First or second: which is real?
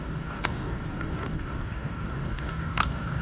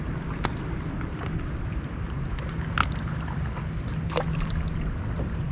second